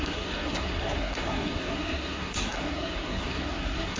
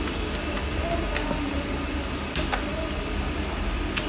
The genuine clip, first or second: second